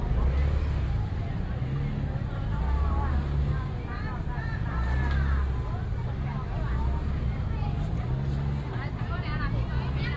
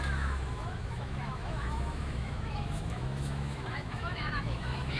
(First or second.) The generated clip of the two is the second